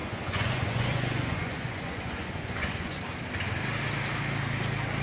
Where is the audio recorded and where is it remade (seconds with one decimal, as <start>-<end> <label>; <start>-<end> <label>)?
0.0-3.0 remade; 3.0-5.0 recorded